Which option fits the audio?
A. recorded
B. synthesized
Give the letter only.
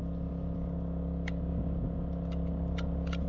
A